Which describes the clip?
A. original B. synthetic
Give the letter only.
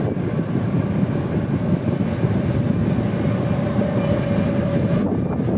A